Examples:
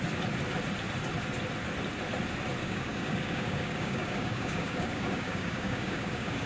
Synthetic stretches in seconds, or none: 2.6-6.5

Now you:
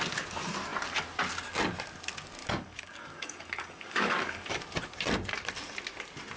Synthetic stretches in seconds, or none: 2.4-4.6

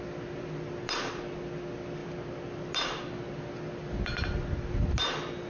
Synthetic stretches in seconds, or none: none

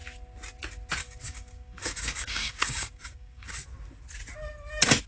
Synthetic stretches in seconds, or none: 1.0-3.5

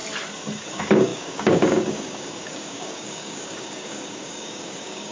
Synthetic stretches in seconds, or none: 0.7-5.1

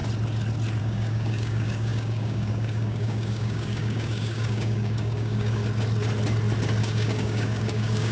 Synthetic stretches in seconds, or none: 0.8-5.6; 6.8-8.1

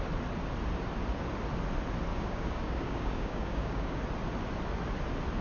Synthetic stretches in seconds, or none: 2.1-4.0